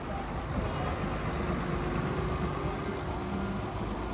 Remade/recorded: recorded